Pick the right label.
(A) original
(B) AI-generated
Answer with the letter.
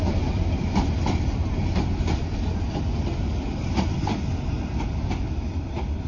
A